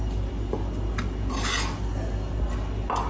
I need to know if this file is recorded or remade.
recorded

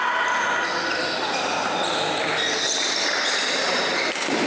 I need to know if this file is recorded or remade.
recorded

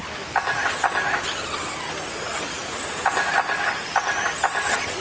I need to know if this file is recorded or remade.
recorded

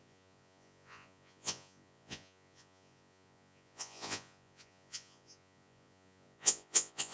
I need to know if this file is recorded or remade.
remade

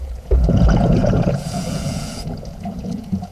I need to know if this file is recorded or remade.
remade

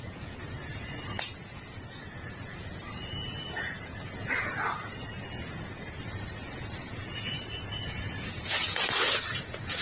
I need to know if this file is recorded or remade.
remade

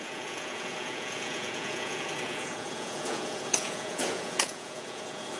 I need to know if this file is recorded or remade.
remade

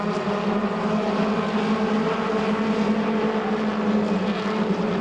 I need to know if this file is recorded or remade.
recorded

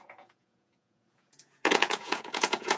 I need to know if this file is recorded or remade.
remade